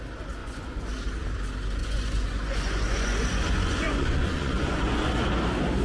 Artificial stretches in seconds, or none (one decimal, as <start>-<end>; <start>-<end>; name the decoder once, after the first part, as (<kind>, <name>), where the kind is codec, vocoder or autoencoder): 0.4-1.0 (vocoder, Vocos); 1.8-5.3